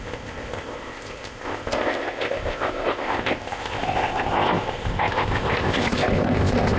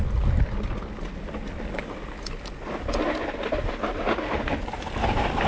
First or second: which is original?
second